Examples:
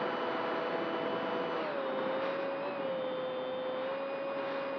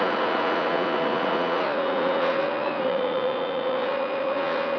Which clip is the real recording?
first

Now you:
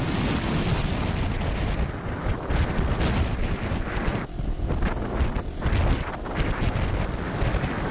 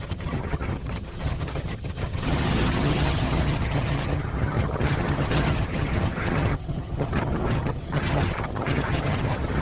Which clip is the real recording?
first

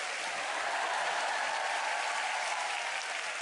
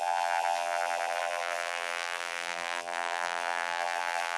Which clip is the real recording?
first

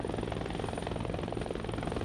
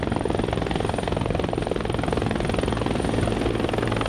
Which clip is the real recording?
first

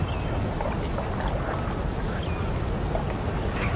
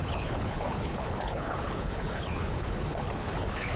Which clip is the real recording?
first